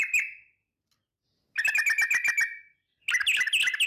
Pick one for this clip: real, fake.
real